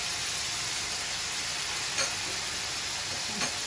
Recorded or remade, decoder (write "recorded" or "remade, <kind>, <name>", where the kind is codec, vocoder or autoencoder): recorded